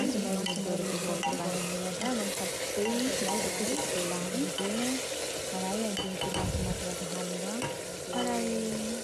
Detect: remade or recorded recorded